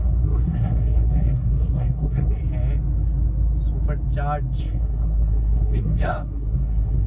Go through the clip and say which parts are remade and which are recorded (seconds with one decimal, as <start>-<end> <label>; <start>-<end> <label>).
0.0-2.4 remade; 2.4-4.6 recorded; 4.6-7.1 remade